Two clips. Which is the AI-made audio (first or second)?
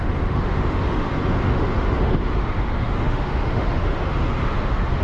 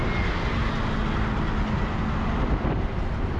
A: first